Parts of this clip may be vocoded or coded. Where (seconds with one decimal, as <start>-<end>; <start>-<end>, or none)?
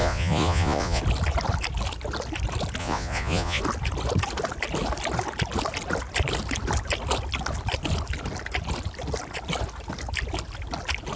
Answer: 0.0-1.0; 2.8-3.6